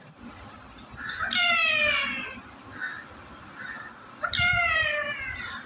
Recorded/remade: recorded